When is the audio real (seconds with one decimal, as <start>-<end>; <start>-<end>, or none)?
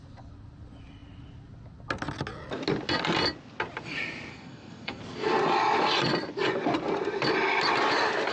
0.0-4.3; 5.0-8.3